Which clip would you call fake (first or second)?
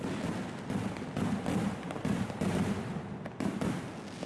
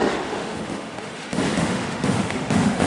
second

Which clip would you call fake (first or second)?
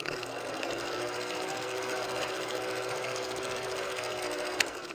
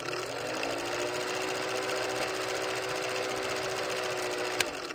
first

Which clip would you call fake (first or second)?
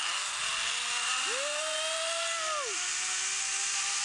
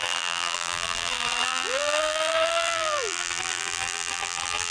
second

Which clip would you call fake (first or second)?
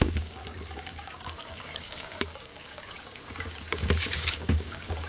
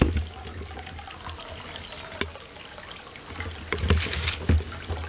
first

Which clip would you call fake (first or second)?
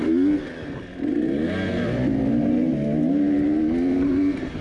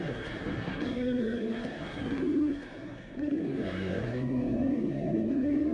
second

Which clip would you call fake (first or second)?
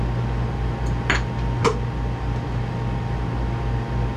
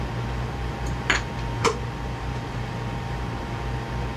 second